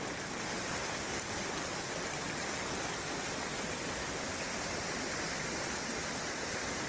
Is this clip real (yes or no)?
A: yes